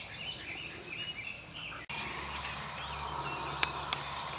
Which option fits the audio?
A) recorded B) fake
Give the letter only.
A